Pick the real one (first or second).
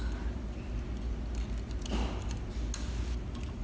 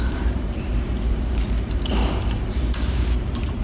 first